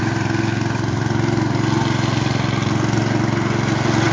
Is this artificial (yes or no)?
no